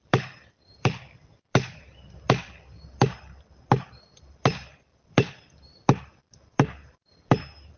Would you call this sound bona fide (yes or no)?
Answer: no